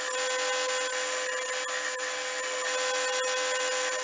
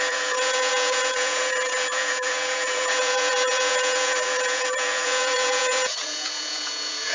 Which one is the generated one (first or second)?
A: second